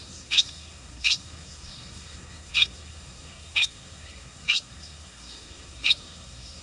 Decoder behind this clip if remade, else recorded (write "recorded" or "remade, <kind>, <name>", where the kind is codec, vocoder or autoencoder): remade, codec, SNAC